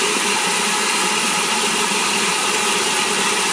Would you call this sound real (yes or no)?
yes